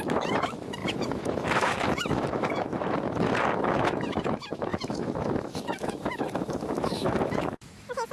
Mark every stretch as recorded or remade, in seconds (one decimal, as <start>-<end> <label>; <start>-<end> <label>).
0.0-8.1 remade